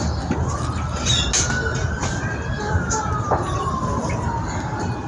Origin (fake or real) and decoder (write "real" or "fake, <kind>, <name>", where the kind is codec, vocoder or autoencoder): real